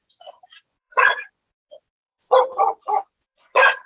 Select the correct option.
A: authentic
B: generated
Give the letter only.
B